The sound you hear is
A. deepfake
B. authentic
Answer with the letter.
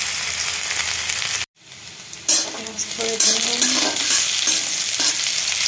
B